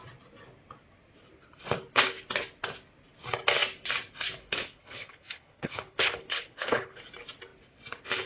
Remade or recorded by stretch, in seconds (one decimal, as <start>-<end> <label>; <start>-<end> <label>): 0.0-4.4 recorded; 4.4-7.0 remade; 7.0-8.3 recorded